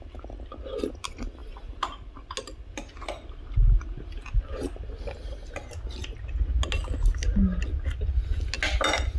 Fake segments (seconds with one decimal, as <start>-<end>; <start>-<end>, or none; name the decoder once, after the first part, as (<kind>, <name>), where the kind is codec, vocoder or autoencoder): none